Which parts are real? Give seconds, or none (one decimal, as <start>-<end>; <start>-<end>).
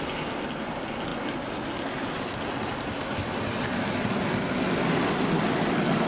0.0-6.1